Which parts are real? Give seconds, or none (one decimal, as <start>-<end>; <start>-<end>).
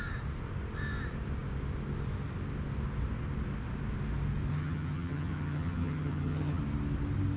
0.0-4.5; 6.6-7.4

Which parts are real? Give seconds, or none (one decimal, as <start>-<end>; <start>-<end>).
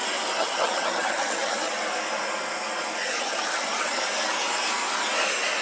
0.0-0.4; 1.7-3.1; 4.0-5.6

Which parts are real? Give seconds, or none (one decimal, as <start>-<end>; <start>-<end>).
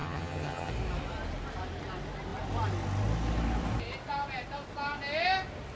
0.7-5.8